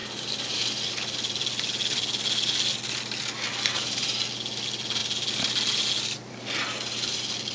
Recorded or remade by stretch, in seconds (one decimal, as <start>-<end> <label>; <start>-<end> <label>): 0.0-7.5 recorded

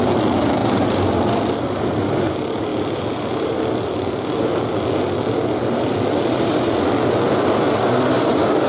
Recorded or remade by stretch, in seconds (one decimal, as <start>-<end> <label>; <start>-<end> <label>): 0.0-0.6 recorded; 0.6-1.3 remade; 1.3-8.7 recorded

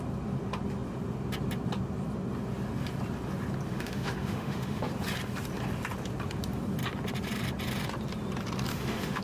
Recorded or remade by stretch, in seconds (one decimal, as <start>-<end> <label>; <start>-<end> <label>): 0.0-3.7 recorded; 3.7-4.9 remade; 4.9-8.7 recorded; 8.7-9.2 remade

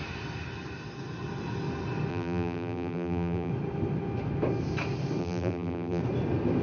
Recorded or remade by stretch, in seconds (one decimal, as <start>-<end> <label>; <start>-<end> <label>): 0.0-2.1 recorded; 2.1-3.5 remade; 3.5-5.2 recorded; 5.2-6.0 remade; 6.0-6.6 recorded

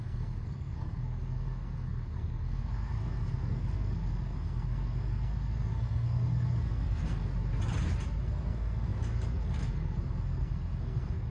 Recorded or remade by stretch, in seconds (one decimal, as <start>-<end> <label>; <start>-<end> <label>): 0.0-7.3 remade; 7.3-8.2 recorded; 8.2-11.3 remade

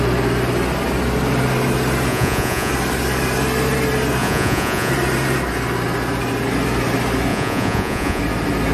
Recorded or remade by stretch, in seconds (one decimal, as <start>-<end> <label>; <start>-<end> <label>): 0.0-2.1 recorded; 2.1-2.7 remade; 2.7-4.2 recorded; 4.2-4.9 remade; 4.9-7.3 recorded; 7.3-8.2 remade; 8.2-8.7 recorded